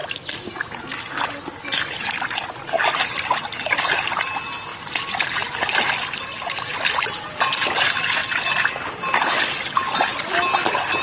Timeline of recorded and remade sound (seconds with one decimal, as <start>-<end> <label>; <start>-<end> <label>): 0.0-11.0 recorded